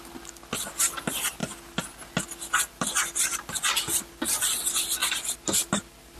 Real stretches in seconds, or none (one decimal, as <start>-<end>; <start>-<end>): 0.0-6.2